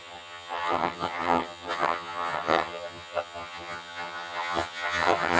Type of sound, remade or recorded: remade